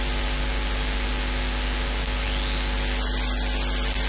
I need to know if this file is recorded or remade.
recorded